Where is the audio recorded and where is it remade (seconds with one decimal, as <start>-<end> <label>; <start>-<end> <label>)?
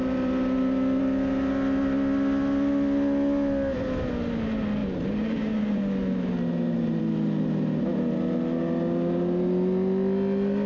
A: 0.0-4.8 recorded; 4.8-7.0 remade; 7.0-10.7 recorded